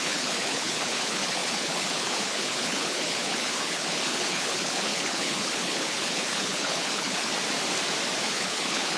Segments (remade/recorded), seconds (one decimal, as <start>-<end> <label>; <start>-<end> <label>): 0.0-7.3 remade; 7.3-8.2 recorded; 8.2-9.0 remade